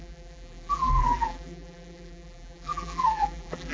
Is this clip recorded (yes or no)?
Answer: no